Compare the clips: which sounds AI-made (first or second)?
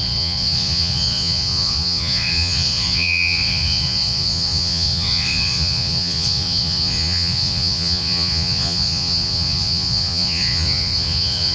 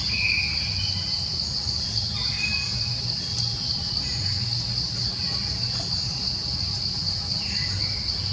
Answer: first